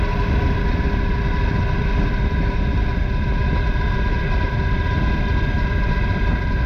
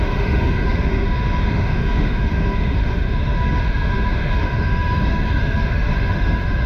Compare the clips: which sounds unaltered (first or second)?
first